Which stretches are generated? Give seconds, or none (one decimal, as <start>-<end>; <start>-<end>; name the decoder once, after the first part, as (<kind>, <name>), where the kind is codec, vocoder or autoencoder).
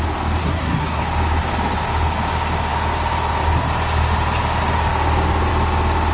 0.4-1.0 (codec, SNAC)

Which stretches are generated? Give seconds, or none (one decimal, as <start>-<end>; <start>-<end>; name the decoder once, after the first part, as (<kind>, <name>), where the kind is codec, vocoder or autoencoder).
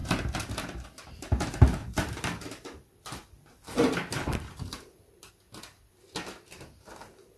0.0-1.1 (vocoder, BigVGAN v2); 1.8-5.3